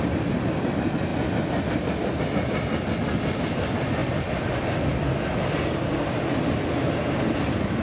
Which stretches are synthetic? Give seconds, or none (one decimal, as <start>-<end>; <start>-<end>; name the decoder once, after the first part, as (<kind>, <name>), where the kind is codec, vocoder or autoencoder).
none

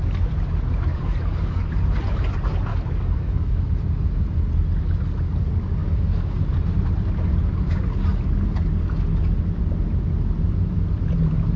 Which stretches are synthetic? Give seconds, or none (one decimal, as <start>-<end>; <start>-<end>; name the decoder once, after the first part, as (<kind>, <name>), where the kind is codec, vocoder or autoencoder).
0.9-1.7 (codec, DAC); 2.7-3.7; 5.8-6.4

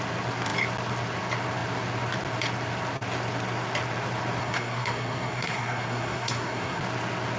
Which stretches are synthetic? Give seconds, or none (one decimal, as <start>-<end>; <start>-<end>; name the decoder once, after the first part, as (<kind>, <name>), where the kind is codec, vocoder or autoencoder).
4.4-6.8 (codec, SNAC)

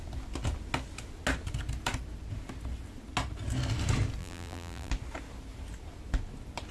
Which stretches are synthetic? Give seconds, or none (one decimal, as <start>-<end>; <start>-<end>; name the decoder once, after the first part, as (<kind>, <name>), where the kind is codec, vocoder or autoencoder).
4.2-4.9 (vocoder, BigVGAN v2)

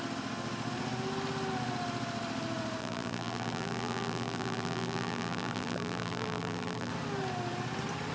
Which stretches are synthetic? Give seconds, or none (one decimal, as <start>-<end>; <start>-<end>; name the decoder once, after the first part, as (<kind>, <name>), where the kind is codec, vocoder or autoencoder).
2.8-6.9 (vocoder, BigVGAN v2)

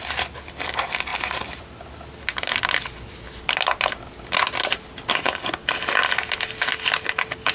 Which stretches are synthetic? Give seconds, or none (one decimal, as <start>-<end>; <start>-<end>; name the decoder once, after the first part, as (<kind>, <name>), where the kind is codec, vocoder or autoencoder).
none